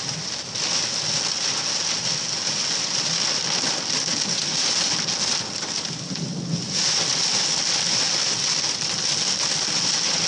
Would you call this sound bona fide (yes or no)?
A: yes